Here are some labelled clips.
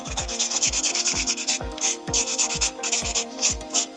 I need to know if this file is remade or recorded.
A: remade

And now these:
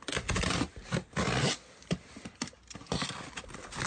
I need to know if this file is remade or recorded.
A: recorded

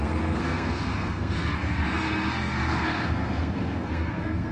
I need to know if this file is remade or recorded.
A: remade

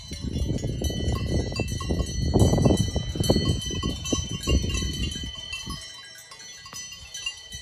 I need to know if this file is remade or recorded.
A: recorded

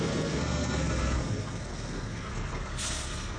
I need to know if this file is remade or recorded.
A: remade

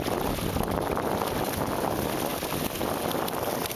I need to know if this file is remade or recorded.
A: recorded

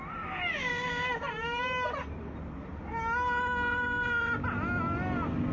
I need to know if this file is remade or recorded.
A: recorded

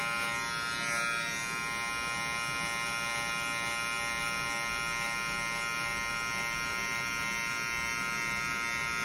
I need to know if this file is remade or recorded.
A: recorded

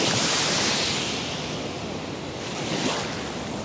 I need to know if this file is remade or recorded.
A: recorded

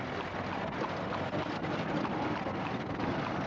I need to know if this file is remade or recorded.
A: recorded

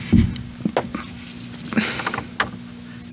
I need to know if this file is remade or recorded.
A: recorded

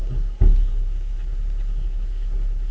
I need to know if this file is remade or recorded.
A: remade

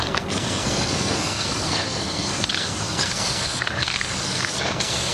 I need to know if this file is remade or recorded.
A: remade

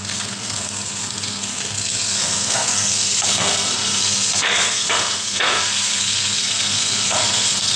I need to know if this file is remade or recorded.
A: remade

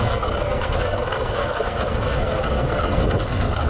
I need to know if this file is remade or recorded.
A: remade